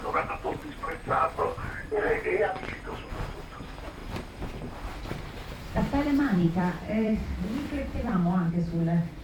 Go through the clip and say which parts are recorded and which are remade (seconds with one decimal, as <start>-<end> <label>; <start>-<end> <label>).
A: 0.0-4.0 recorded; 4.0-8.5 remade; 8.5-9.2 recorded